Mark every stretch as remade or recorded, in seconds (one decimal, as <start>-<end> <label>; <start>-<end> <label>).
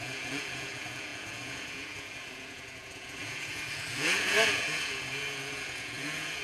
0.0-6.4 remade